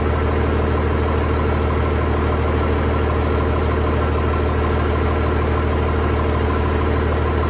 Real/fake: real